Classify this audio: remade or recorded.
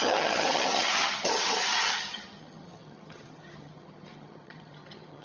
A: remade